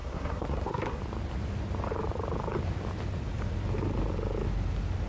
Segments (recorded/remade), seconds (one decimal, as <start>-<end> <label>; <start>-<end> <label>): 0.0-1.0 remade; 1.0-5.1 recorded